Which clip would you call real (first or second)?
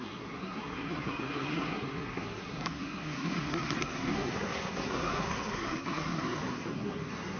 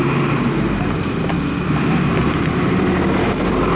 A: second